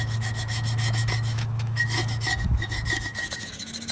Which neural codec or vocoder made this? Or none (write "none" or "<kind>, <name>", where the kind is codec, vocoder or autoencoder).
autoencoder, DAC-VAE